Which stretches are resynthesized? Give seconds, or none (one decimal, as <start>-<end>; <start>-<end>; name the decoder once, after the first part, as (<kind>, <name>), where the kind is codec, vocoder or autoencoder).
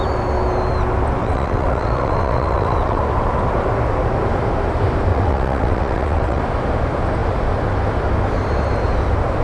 1.2-3.0 (vocoder, WaveNeXt); 5.1-6.4